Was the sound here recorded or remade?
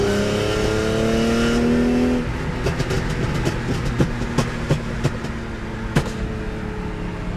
recorded